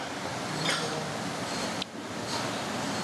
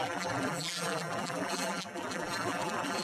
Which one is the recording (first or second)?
first